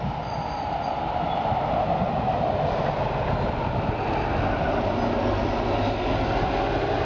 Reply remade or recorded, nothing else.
recorded